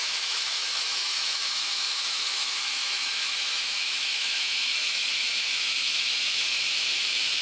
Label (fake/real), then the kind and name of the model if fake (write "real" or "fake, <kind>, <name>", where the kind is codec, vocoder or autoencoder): fake, autoencoder, DAC-VAE